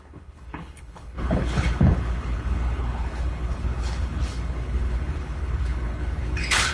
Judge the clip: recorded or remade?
remade